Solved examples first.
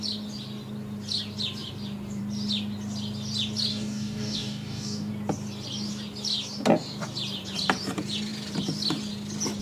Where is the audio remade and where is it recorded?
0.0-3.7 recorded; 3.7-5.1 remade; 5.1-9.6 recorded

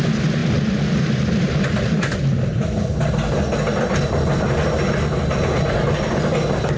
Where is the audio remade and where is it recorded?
0.0-6.8 recorded

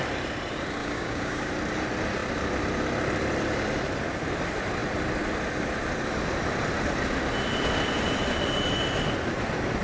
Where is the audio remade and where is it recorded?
0.0-0.8 recorded; 0.8-1.5 remade; 1.5-9.8 recorded

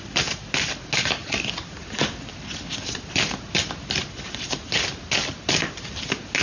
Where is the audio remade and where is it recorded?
0.0-6.4 recorded